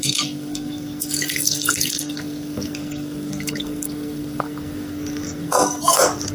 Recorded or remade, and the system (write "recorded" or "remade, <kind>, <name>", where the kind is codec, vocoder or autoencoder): remade, codec, SNAC